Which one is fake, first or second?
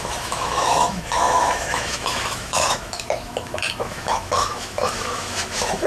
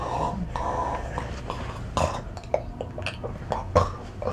first